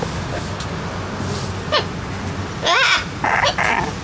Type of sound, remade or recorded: recorded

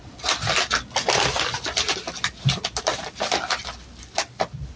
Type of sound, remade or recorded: remade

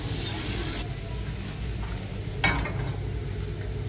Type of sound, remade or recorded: recorded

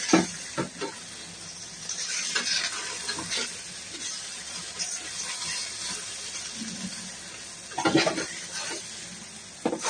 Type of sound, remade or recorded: recorded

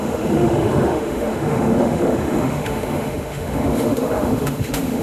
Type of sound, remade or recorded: remade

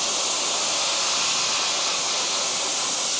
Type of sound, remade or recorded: recorded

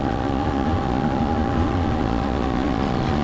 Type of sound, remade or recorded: remade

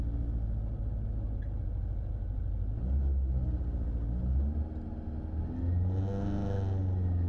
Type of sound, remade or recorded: recorded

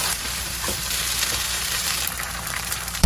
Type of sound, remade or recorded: remade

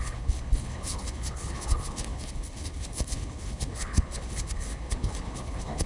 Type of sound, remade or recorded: remade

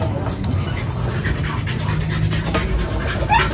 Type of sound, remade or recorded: recorded